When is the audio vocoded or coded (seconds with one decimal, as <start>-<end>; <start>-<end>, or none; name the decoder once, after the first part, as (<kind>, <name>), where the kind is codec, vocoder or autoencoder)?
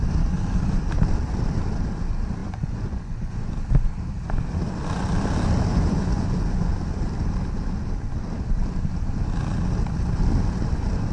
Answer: 2.4-3.5 (vocoder, Vocos); 5.7-6.7